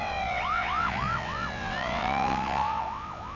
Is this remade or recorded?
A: remade